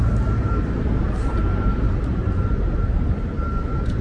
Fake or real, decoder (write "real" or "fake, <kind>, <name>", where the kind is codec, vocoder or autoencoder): fake, vocoder, BigVGAN v2